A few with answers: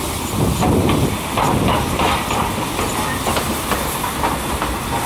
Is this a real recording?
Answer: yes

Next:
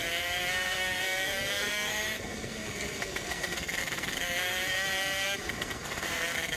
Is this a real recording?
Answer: no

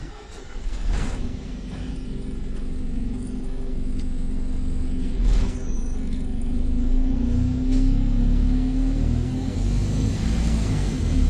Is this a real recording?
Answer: no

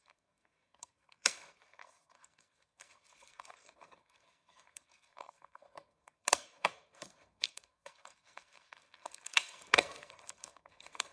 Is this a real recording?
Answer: no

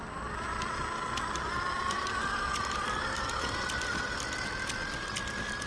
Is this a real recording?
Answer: yes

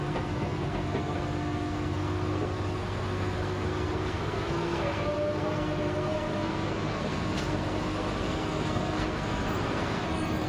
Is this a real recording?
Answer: no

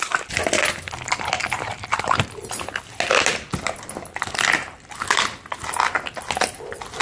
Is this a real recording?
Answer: yes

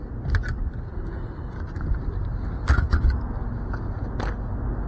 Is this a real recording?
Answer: yes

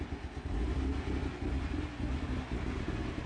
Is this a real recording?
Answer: yes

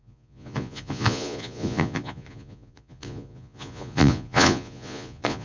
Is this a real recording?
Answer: no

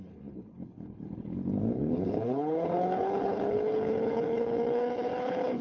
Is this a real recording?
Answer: no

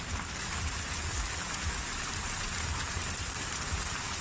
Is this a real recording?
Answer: yes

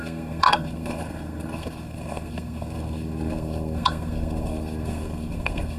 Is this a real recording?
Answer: no